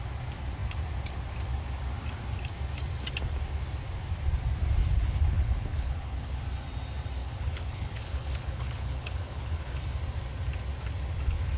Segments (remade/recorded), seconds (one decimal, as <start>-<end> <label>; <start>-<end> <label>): 0.0-4.8 recorded; 4.8-6.4 remade; 6.4-7.2 recorded; 7.2-9.7 remade; 9.7-11.6 recorded